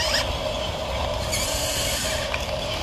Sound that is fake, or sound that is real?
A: real